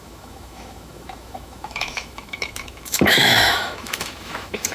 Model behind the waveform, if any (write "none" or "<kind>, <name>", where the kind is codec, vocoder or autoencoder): autoencoder, DAC-VAE